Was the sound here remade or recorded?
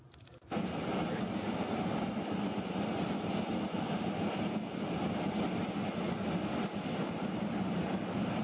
recorded